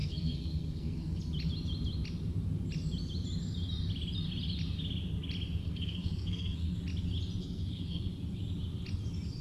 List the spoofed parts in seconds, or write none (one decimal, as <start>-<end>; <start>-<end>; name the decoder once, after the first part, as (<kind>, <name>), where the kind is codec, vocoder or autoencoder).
0.0-1.2 (codec, SNAC); 5.6-6.8; 7.4-8.1